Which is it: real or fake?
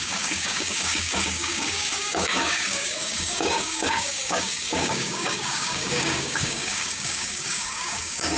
fake